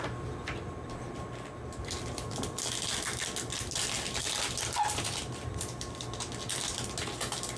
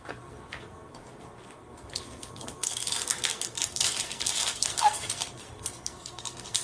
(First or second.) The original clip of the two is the first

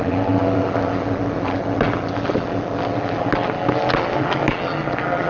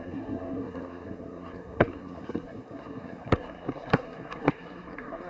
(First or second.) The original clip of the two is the first